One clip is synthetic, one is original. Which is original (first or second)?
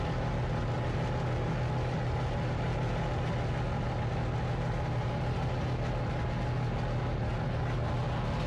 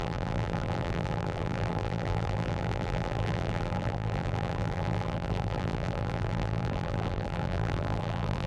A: first